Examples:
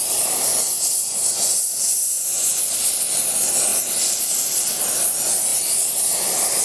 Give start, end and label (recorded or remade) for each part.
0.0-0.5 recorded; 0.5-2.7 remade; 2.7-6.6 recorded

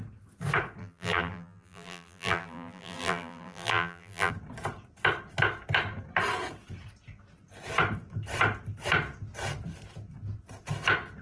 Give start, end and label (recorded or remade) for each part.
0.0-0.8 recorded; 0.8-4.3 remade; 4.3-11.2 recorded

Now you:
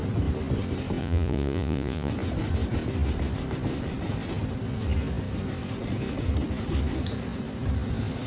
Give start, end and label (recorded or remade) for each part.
0.0-1.0 recorded; 1.0-2.1 remade; 2.1-8.3 recorded

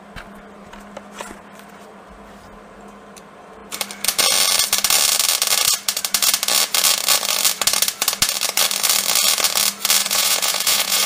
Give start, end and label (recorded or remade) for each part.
0.0-10.0 recorded; 10.0-11.1 remade

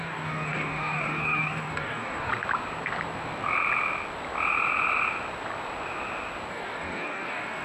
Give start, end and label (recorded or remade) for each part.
0.0-2.3 remade; 2.3-6.5 recorded; 6.5-7.6 remade